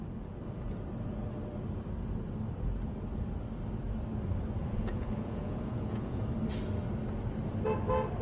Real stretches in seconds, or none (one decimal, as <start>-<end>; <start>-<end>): 0.0-4.6; 6.2-8.2